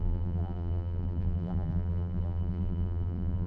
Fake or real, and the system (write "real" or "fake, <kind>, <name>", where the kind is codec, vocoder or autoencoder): fake, vocoder, BigVGAN v2